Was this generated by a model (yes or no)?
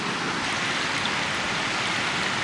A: no